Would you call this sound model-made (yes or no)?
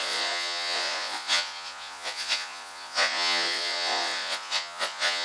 yes